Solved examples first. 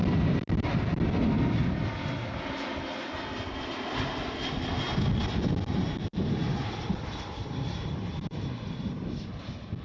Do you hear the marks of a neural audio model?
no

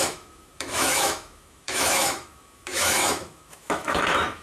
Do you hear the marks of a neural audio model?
yes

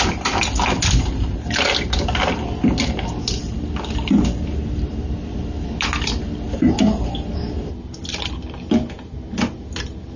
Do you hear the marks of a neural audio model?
no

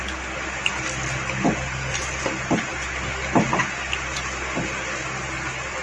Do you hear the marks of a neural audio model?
no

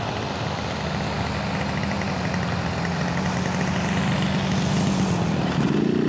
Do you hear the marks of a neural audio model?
no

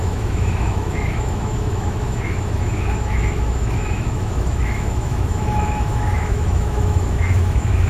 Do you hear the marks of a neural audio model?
yes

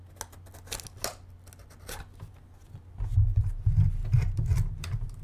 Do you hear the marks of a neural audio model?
no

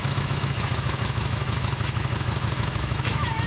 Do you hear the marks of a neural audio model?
yes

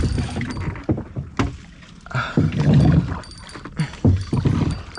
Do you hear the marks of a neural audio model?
no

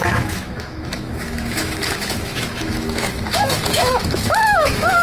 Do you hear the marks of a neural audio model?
yes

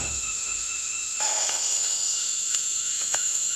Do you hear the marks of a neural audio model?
yes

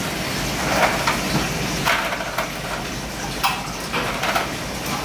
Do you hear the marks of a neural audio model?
no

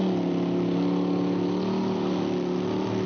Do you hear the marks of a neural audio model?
no